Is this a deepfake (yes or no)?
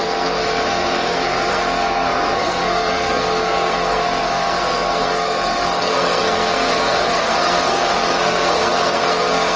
yes